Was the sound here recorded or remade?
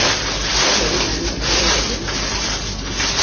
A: recorded